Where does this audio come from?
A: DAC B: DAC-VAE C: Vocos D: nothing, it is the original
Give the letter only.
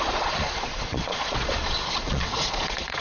C